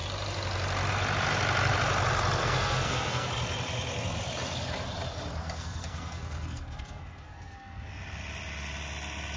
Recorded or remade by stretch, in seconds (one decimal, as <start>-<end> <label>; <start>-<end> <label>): 0.0-2.4 recorded; 2.4-3.3 remade; 3.3-5.4 recorded; 5.4-7.9 remade; 7.9-9.4 recorded